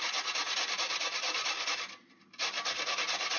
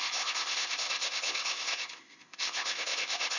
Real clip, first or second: first